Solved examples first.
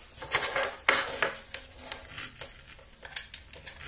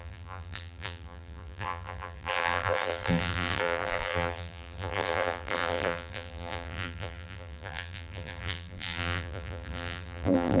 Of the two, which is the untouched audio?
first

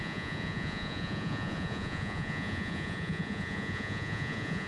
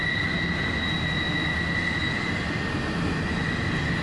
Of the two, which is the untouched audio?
second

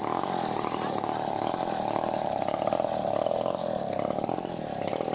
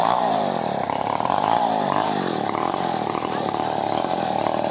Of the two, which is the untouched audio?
first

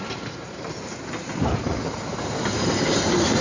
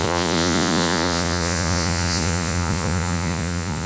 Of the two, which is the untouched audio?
first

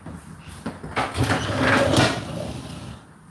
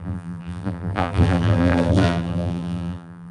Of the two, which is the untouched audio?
first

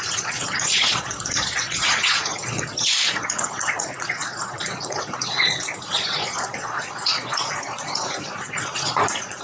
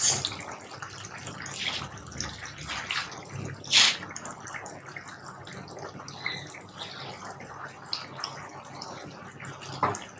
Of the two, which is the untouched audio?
second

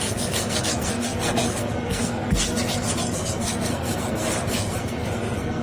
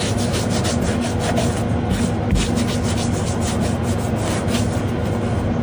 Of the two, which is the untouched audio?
second